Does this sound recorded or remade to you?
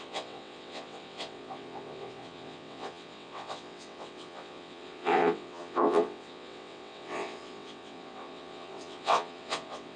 remade